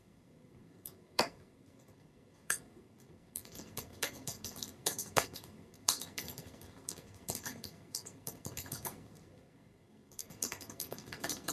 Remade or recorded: remade